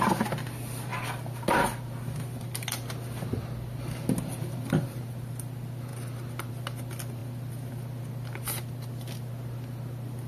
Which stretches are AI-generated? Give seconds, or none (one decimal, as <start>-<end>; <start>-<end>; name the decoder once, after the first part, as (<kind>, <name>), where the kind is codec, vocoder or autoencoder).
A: none